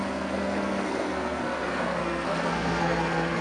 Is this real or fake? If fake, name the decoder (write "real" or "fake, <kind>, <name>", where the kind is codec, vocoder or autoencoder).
fake, codec, SNAC